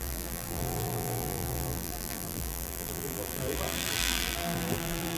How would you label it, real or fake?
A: fake